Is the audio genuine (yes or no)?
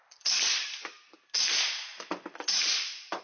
yes